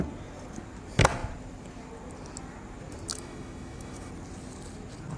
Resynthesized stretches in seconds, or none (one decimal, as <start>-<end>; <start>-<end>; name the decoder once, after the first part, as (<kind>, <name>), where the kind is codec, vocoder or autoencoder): 3.1-4.1 (autoencoder, DAC-VAE)